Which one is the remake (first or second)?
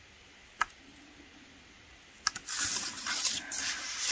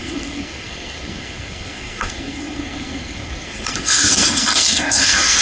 second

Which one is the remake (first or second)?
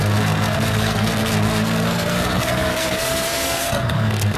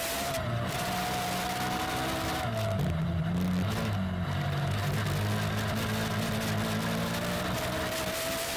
first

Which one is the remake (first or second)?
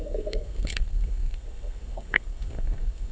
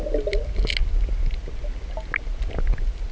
first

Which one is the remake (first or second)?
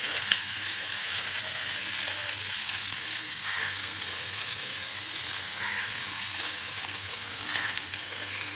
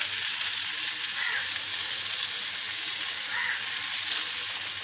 first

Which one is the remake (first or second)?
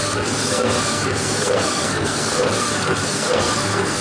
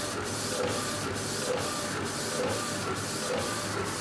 first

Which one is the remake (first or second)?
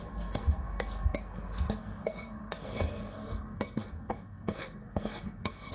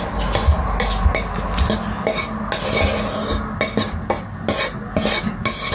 first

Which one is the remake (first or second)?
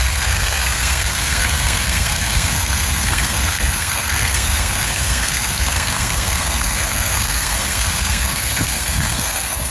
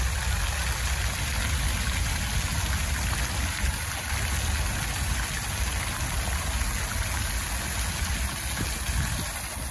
first